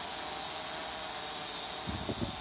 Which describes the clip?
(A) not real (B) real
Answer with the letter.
B